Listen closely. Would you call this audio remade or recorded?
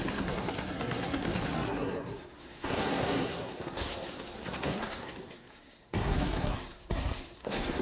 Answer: remade